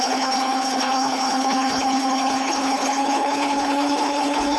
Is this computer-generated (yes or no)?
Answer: yes